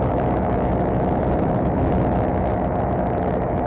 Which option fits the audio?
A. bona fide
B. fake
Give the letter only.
B